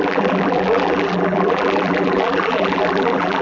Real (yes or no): no